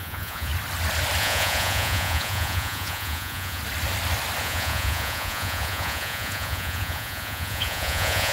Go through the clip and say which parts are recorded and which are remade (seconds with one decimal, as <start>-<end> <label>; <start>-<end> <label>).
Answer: 0.0-0.5 remade; 0.5-1.2 recorded; 1.2-3.6 remade; 3.6-4.4 recorded; 4.4-8.3 remade